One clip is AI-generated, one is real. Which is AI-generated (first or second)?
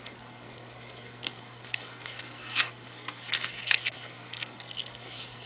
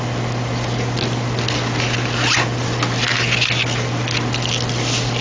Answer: first